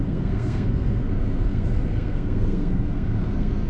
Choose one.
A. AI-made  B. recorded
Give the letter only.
A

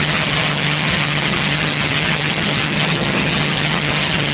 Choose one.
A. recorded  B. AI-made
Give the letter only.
B